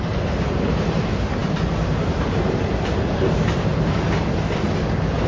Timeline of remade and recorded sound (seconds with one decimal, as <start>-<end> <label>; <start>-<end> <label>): 0.0-3.7 remade; 3.7-5.3 recorded